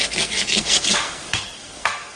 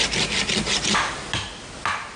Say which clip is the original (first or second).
second